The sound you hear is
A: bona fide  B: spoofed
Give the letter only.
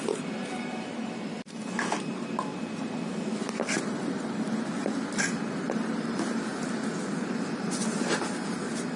B